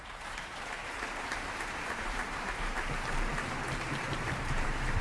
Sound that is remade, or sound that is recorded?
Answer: remade